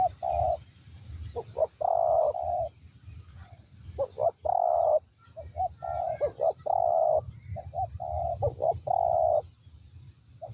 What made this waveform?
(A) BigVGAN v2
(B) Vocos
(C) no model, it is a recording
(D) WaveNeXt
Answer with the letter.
C